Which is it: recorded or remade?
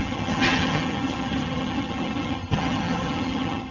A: remade